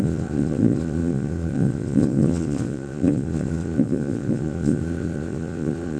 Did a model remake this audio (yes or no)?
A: yes